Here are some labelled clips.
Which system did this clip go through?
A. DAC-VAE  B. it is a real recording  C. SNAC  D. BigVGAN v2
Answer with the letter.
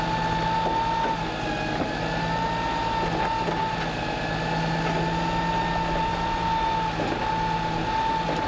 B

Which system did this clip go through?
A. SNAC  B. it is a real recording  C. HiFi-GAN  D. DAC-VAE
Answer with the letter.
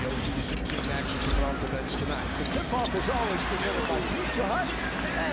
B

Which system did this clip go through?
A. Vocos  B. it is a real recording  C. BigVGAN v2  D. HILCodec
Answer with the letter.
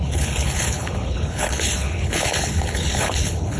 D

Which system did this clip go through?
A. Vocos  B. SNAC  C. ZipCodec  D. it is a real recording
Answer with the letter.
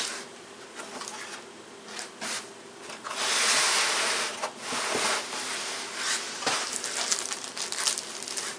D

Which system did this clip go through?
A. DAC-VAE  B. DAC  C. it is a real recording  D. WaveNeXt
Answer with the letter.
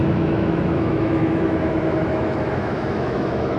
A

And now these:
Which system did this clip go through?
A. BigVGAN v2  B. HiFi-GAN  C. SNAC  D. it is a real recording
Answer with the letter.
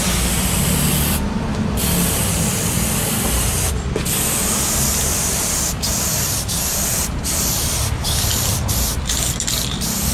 A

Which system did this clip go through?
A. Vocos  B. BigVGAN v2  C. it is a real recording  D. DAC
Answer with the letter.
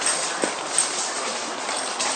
C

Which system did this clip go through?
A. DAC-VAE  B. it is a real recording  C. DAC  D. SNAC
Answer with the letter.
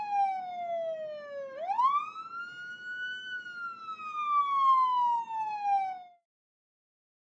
B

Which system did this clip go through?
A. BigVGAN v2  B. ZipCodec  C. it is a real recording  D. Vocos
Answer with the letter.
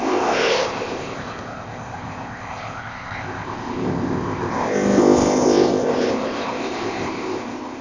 B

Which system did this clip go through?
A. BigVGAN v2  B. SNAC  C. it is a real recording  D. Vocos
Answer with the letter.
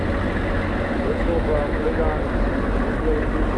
C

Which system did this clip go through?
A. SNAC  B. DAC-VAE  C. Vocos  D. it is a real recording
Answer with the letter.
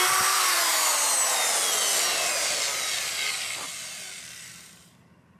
D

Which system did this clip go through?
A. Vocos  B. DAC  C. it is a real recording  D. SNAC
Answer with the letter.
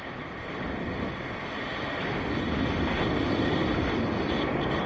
C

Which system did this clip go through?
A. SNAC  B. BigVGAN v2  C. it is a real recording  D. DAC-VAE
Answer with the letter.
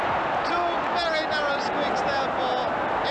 C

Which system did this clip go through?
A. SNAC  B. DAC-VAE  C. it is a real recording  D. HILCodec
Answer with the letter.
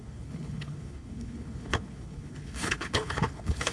D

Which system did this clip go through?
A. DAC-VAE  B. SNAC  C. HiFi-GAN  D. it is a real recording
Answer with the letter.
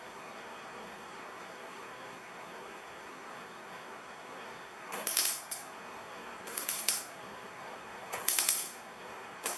B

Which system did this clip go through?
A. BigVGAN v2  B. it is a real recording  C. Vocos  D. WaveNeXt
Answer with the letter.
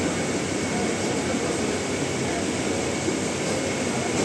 B